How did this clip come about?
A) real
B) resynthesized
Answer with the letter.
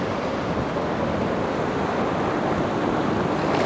A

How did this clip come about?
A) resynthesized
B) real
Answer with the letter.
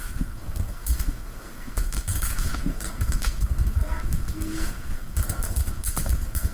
A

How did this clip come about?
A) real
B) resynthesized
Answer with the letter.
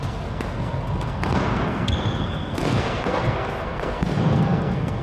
B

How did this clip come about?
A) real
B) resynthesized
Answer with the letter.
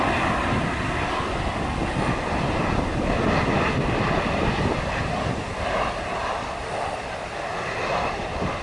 A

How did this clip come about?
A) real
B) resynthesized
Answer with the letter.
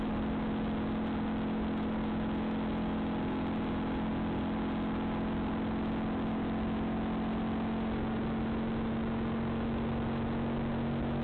A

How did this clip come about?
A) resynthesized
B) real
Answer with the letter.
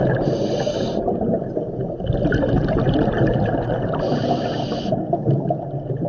B